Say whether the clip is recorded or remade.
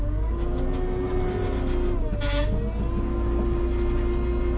recorded